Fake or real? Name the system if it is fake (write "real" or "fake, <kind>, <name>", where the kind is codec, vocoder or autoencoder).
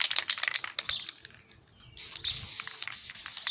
real